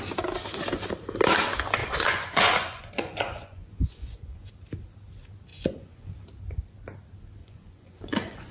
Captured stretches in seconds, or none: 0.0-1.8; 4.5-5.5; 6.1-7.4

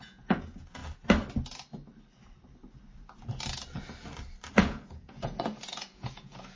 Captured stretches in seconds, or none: 0.8-4.5

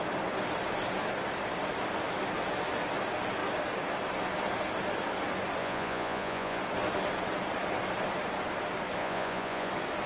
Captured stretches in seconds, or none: 0.0-5.6; 6.6-9.0; 9.7-10.1

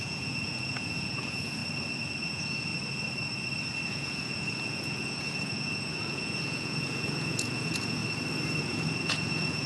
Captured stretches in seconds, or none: 1.6-2.2; 2.7-3.9; 8.0-8.6

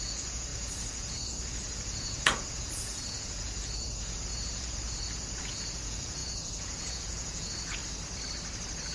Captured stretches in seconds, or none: 7.8-8.9

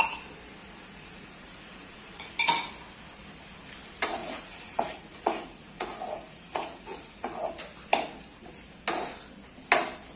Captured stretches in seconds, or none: 0.0-0.6; 2.3-4.2; 7.4-10.2

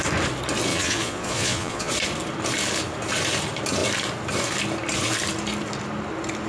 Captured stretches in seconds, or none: 0.0-0.7; 1.9-6.5

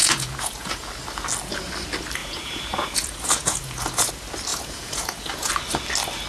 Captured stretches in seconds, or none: 0.9-2.2; 4.1-4.5; 5.5-6.3